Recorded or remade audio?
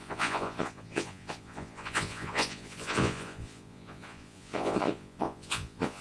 remade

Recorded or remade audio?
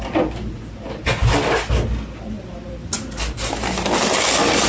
recorded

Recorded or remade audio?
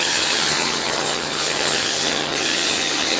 remade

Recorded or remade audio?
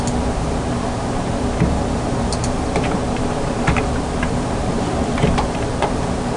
remade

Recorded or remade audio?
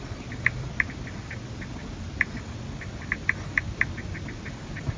recorded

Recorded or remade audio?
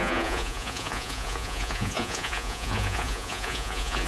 remade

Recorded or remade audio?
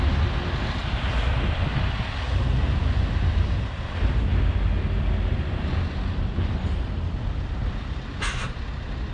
recorded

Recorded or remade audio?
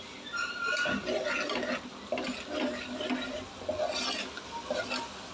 recorded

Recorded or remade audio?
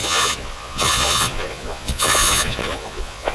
remade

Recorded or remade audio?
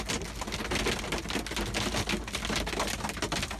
recorded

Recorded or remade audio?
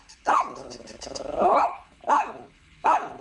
remade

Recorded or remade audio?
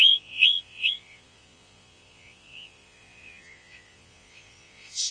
remade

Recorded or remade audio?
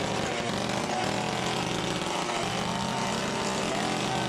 recorded